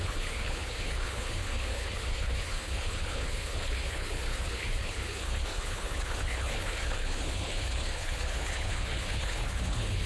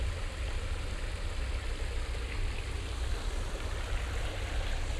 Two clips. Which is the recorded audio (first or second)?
second